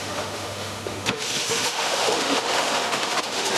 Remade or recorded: remade